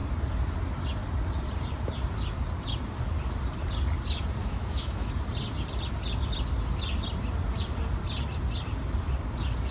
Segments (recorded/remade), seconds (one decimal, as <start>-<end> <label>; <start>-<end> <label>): 0.0-4.4 recorded; 4.4-5.1 remade; 5.1-9.7 recorded

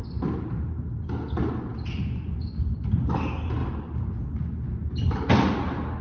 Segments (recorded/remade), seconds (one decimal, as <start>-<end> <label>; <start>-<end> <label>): 0.0-6.0 recorded

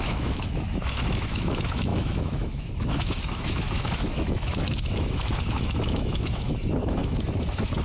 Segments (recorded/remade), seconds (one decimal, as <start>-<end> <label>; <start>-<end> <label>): 0.0-7.8 remade

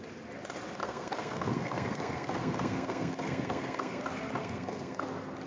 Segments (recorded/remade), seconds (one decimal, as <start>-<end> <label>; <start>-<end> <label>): 0.0-0.8 recorded; 0.8-4.0 remade; 4.0-4.4 recorded; 4.4-5.0 remade; 5.0-5.5 recorded

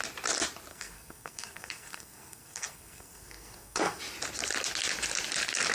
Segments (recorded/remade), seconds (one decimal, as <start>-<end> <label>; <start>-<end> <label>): 0.0-0.7 recorded; 0.7-4.0 remade; 4.0-5.7 recorded

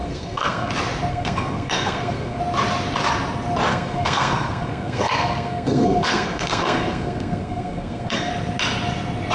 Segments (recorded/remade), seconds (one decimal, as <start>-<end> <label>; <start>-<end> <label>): 0.0-0.7 remade; 0.7-1.1 recorded; 1.1-2.4 remade; 2.4-3.7 recorded; 3.7-8.3 remade; 8.3-9.3 recorded

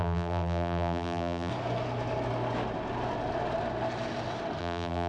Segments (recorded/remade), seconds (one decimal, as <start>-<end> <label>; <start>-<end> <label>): 0.0-1.5 remade; 1.5-4.6 recorded; 4.6-5.1 remade